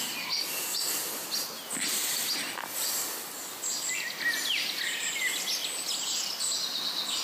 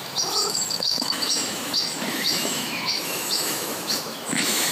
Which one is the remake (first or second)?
second